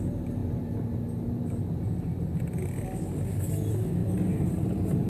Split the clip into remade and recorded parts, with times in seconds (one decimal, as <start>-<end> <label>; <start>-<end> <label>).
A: 0.0-4.0 recorded; 4.0-5.1 remade